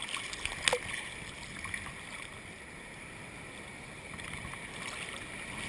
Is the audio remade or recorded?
recorded